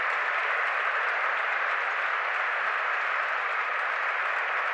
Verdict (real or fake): fake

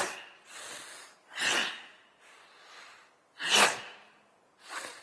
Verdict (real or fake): real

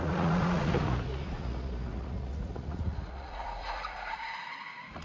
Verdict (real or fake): fake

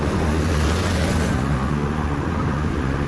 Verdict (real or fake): fake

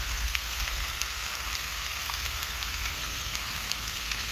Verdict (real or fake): fake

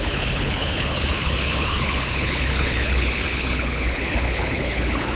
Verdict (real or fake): fake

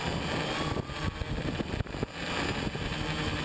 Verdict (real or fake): real